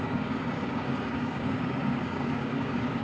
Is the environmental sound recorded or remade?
remade